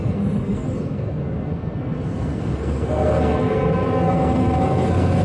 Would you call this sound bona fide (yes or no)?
no